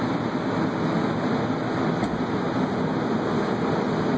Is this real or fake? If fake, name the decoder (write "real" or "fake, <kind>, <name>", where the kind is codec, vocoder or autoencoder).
real